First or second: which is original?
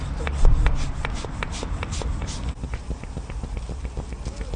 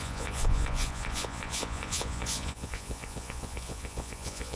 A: first